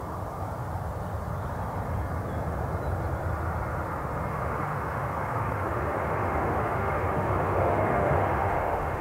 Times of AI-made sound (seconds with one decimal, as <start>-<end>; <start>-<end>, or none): 4.3-9.0